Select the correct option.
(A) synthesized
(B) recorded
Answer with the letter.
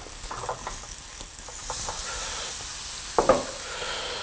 B